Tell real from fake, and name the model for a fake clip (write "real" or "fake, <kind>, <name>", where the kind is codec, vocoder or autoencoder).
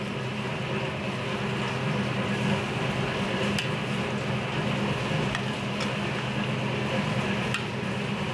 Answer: real